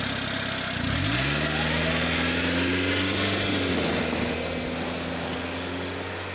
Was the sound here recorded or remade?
recorded